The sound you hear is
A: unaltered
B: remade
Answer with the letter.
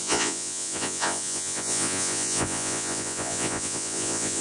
B